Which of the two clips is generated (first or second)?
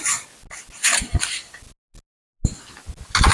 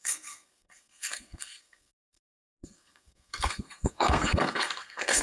second